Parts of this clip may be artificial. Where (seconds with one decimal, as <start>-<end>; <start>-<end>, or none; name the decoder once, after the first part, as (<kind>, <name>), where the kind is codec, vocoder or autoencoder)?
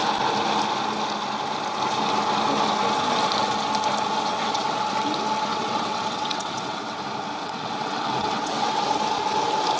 4.3-4.8 (vocoder, WaveNeXt); 5.5-7.0; 7.4-8.8